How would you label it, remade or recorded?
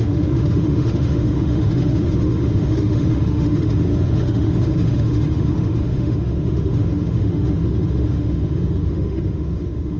remade